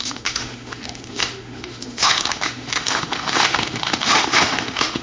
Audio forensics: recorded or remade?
remade